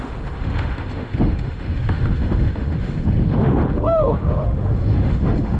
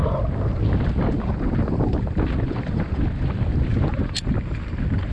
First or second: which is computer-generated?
first